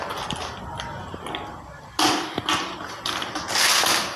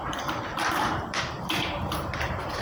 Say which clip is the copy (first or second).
second